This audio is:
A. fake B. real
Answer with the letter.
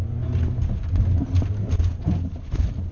B